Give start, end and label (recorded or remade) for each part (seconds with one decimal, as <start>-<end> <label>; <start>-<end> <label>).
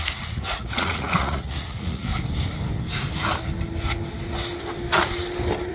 0.0-2.1 remade; 2.1-5.7 recorded